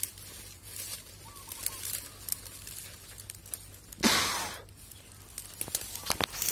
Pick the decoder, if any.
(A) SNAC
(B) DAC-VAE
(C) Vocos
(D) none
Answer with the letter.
D